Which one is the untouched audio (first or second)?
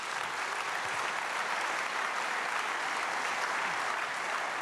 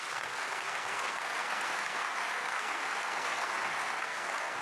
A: first